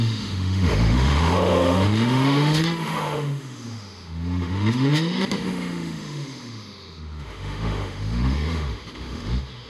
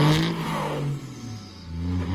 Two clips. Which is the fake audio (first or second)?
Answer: first